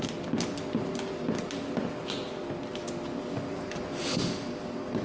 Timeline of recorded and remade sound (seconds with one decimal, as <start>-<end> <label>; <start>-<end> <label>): 0.0-5.0 recorded